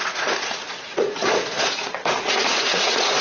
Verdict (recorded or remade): remade